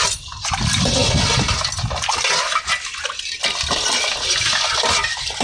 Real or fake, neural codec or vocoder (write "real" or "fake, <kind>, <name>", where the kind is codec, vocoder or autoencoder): real